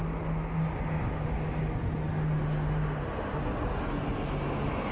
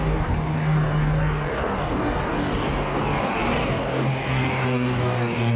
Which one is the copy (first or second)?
second